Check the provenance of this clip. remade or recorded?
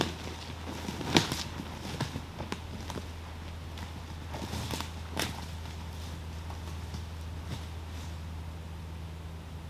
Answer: recorded